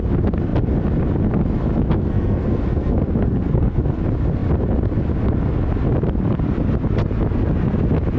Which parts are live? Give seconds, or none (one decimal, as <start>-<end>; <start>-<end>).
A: 0.0-1.9; 4.0-8.2